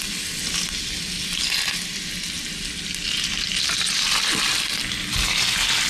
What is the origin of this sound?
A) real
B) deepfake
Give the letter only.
A